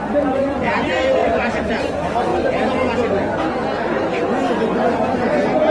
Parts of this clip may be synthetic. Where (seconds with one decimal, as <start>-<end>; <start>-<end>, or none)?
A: 1.2-1.9